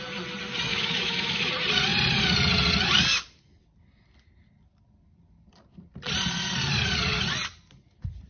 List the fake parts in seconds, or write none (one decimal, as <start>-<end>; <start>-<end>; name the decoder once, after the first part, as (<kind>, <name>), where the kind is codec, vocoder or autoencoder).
0.7-1.5 (autoencoder, DAC-VAE)

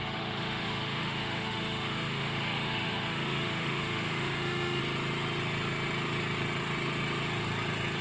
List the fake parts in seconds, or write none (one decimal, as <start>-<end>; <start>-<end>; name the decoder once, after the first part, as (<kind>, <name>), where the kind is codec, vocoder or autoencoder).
0.0-4.8 (autoencoder, DAC-VAE)